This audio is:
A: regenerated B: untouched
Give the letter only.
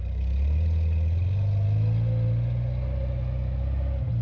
B